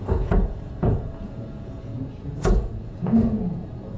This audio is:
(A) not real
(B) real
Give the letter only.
A